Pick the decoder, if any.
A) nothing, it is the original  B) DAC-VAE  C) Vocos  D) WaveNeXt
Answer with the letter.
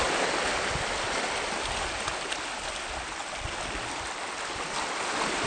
A